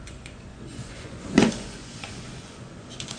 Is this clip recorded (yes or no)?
no